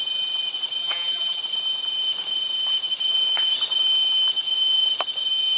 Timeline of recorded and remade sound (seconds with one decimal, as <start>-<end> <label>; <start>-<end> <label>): 0.0-0.8 recorded; 0.8-1.4 remade; 1.4-5.6 recorded